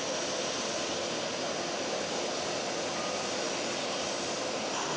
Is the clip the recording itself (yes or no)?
yes